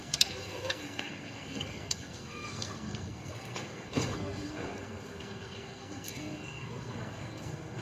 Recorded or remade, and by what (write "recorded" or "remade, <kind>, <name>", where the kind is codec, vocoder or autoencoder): remade, codec, SNAC